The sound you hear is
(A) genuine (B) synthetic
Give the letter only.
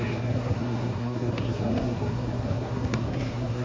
B